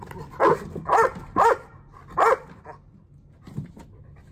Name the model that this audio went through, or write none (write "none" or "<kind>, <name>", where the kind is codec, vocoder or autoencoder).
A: none